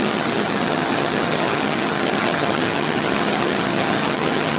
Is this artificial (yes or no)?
yes